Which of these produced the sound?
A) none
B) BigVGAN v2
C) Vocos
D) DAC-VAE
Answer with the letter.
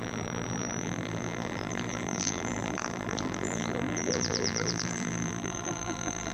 B